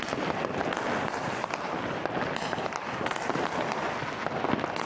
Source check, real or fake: real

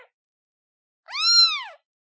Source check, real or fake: real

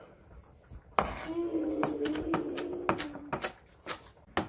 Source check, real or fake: real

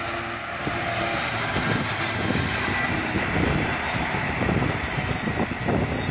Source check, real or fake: real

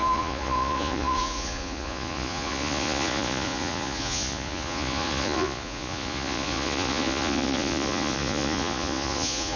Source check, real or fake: fake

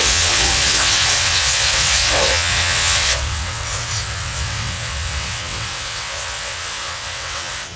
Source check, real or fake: fake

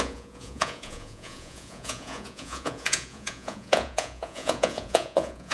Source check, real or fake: fake